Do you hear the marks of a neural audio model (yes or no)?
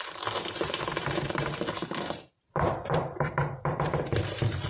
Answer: yes